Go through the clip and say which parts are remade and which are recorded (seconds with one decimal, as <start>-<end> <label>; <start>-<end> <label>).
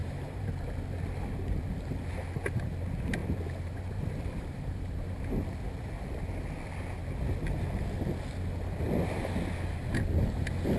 0.0-0.5 remade; 0.5-3.2 recorded; 3.2-5.3 remade; 5.3-10.8 recorded